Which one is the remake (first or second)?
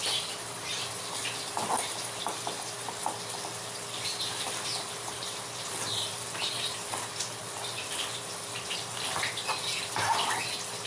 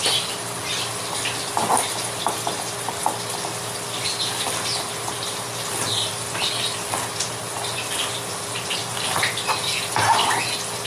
first